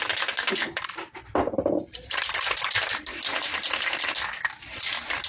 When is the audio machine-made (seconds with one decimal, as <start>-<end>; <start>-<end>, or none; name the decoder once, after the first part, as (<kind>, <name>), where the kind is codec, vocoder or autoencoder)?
none